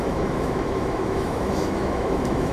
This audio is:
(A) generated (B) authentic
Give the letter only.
A